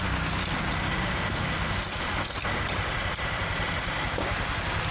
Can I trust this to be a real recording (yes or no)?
yes